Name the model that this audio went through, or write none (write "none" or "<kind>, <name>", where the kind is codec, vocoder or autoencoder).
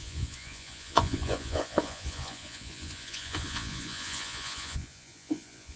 vocoder, Vocos